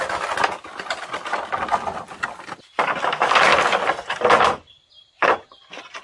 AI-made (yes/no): no